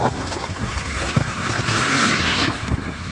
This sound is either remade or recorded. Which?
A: remade